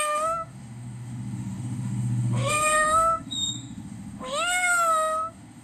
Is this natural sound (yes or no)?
no